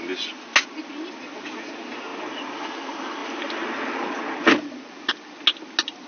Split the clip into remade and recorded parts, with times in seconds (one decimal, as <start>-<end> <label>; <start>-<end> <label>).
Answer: 0.0-6.1 recorded